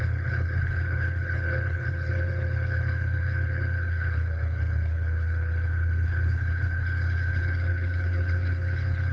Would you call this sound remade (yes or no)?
yes